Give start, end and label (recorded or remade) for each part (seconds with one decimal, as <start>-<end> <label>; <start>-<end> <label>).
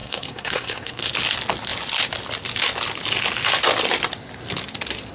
0.0-1.1 remade; 1.1-5.1 recorded